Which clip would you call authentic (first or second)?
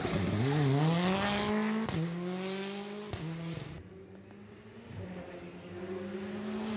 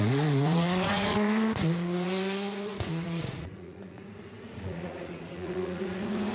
first